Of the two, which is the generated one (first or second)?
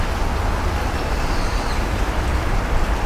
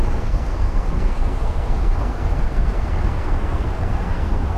second